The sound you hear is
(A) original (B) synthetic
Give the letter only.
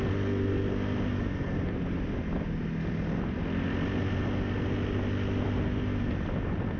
A